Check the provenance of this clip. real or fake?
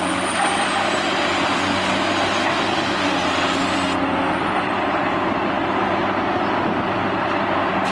real